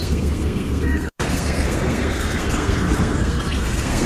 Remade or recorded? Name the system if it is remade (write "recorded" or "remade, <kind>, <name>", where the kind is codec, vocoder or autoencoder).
remade, codec, SNAC